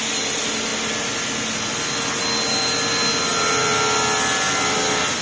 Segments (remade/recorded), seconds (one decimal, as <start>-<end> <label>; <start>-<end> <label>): 0.0-5.2 recorded